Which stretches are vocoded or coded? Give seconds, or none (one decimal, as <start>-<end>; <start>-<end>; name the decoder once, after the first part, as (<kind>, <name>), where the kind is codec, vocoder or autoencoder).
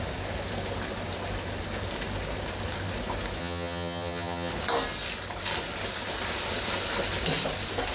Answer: 3.4-4.5 (vocoder, HiFi-GAN)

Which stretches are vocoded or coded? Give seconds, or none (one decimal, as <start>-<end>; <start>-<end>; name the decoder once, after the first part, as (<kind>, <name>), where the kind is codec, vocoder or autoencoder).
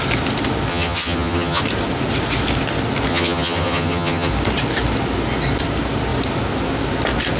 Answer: 0.7-1.6 (vocoder, HiFi-GAN); 3.1-4.3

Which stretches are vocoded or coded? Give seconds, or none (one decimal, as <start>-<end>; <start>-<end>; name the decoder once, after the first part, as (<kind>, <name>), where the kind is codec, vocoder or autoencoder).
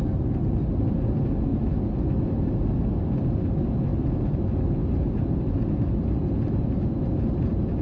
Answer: none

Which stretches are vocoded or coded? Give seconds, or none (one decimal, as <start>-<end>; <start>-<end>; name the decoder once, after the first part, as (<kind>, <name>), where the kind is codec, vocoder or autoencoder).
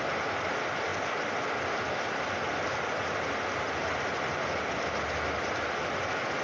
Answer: none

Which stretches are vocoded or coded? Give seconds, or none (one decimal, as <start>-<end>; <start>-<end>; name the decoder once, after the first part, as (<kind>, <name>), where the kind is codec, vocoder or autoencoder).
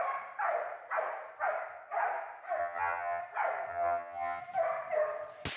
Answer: 2.6-3.2 (vocoder, HiFi-GAN); 3.7-4.4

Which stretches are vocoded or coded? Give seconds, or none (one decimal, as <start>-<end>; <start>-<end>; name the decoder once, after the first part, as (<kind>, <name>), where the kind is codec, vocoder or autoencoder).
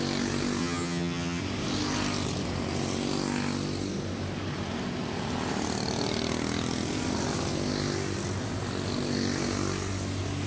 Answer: 0.6-1.4 (vocoder, HiFi-GAN)